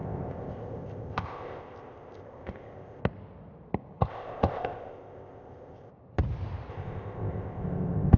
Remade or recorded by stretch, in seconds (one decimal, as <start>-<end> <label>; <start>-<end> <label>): 0.0-3.0 remade; 3.0-4.1 recorded; 4.1-5.9 remade; 5.9-6.7 recorded; 6.7-8.2 remade

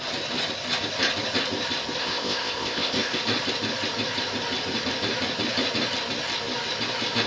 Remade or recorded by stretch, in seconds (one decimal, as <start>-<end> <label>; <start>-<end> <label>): 0.0-2.0 recorded; 2.0-3.2 remade; 3.2-7.3 recorded

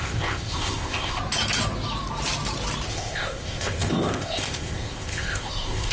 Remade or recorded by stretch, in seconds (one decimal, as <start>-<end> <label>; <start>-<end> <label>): 0.0-1.2 remade; 1.2-2.9 recorded; 2.9-5.9 remade

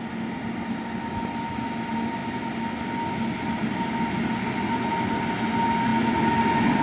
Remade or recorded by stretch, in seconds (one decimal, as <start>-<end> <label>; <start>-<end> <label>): 0.0-6.8 recorded